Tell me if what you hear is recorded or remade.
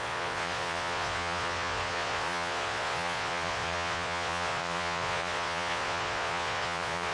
remade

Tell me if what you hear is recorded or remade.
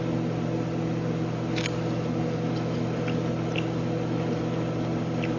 recorded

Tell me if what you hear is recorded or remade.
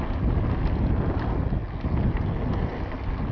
recorded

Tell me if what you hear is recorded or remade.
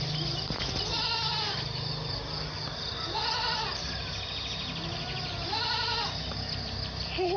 recorded